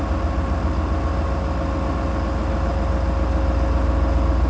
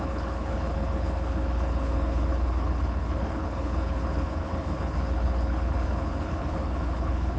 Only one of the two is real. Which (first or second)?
first